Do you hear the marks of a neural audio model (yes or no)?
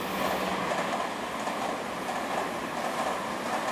no